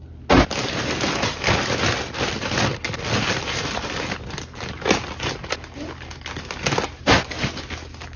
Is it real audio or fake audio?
real